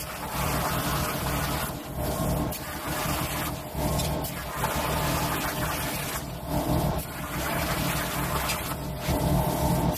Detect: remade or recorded recorded